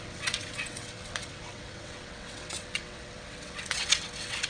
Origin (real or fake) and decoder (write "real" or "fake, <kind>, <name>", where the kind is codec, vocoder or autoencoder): fake, vocoder, WaveNeXt